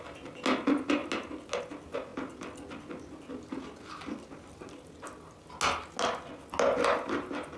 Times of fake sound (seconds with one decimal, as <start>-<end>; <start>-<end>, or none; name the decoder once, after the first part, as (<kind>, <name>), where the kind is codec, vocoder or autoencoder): none